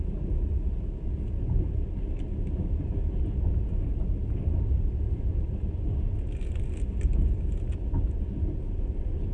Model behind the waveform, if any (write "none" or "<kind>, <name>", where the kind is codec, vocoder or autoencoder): none